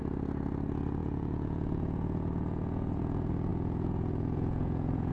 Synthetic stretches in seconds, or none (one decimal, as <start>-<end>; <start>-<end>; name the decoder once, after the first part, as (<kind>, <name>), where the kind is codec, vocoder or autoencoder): 1.0-3.0 (vocoder, Vocos); 3.5-5.1